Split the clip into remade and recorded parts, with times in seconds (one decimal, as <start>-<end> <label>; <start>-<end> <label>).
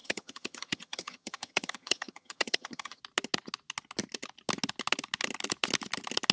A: 0.0-3.0 remade; 3.0-6.3 recorded